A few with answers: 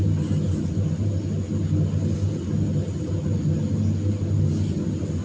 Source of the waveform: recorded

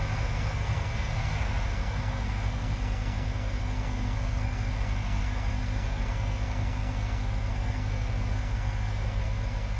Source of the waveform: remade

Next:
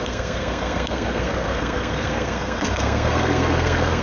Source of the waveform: remade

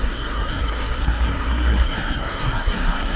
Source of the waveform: remade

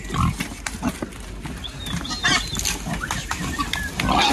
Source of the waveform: recorded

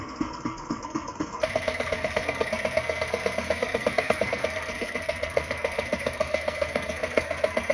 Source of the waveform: remade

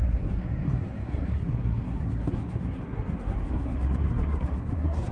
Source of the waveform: remade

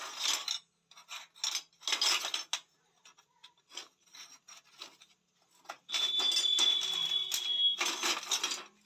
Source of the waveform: recorded